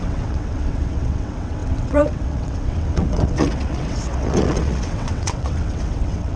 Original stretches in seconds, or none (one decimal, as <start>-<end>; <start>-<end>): none